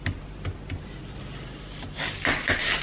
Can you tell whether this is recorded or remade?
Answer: recorded